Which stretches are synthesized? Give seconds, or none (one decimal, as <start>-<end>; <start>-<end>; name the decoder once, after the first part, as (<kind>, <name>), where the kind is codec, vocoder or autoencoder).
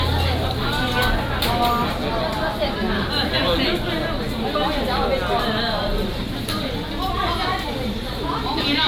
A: none